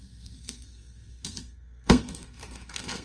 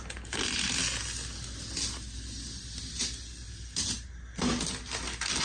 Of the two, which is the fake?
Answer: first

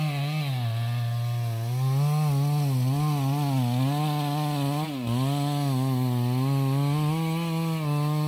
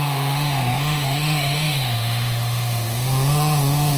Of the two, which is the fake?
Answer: second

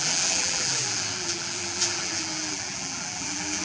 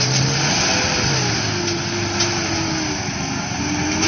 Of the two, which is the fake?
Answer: first